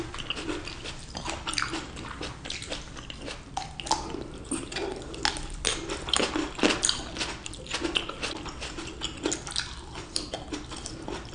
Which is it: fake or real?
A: real